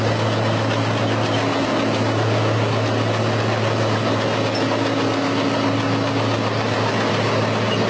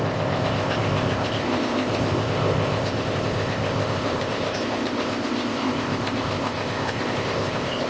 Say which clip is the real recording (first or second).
first